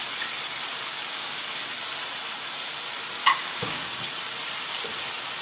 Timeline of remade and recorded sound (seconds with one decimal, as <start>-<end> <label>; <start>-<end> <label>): 0.0-0.9 recorded; 0.9-1.4 remade; 1.4-3.2 recorded; 3.2-4.0 remade; 4.0-5.4 recorded